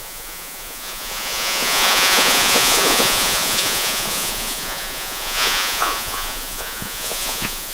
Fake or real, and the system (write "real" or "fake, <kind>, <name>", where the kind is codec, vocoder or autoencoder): fake, vocoder, Vocos